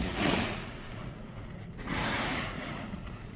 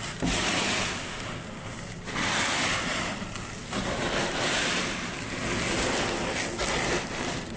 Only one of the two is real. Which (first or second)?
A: second